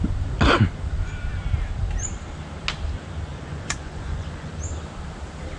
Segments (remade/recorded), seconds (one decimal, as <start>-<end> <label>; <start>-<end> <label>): 0.0-3.3 recorded; 3.3-4.5 remade; 4.5-5.6 recorded